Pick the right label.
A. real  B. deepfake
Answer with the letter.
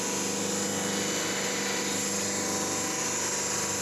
A